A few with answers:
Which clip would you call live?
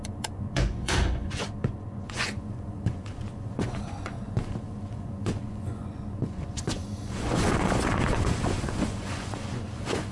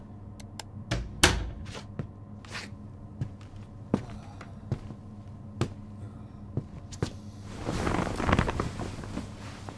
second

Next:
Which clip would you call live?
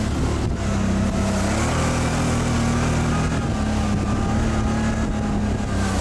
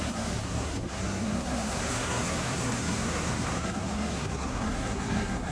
first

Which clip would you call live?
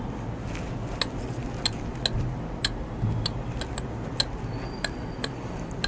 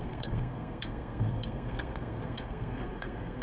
first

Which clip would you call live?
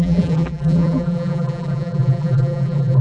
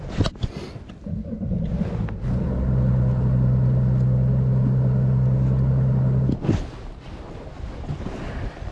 second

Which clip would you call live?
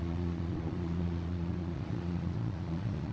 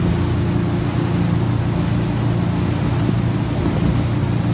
second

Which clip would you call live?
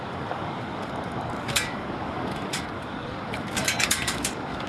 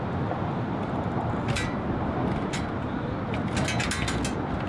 second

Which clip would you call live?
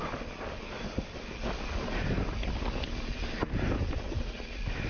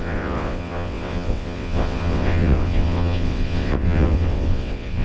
first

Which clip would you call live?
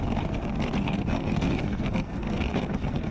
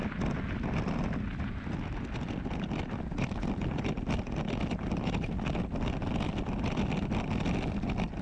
second